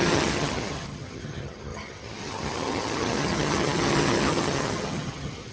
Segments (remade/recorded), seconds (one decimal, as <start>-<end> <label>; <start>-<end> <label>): 0.0-5.5 remade